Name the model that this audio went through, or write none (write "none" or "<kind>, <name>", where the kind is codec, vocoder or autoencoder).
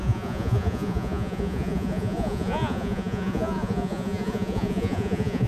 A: vocoder, Vocos